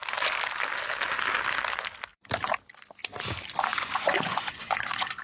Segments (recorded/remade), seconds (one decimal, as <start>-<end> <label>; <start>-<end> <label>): 0.0-3.7 recorded; 3.7-5.2 remade